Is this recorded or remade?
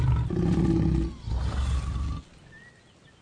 recorded